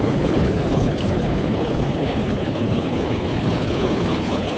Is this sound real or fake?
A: fake